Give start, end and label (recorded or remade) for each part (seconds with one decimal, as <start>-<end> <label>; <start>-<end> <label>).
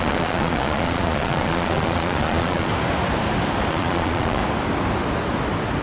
0.0-2.7 remade; 2.7-3.7 recorded; 3.7-4.4 remade; 4.4-5.8 recorded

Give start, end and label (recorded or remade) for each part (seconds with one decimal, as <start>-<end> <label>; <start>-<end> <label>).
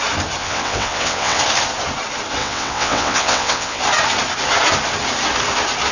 0.0-0.4 recorded; 0.4-1.4 remade; 1.4-2.4 recorded; 2.4-3.8 remade; 3.8-5.9 recorded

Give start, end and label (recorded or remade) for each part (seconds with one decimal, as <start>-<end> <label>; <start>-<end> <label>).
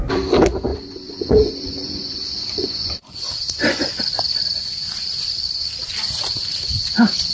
0.0-0.7 recorded; 0.7-4.0 remade; 4.0-7.3 recorded